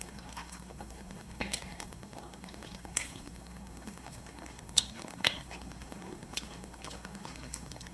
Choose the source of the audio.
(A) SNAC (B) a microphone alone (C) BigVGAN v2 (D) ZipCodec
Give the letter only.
A